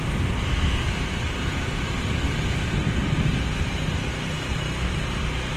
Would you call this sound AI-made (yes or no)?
no